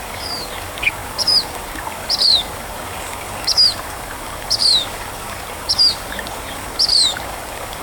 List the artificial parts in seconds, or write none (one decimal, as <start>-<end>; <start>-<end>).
0.0-7.8